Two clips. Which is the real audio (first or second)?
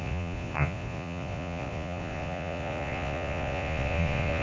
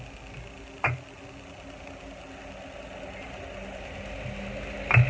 second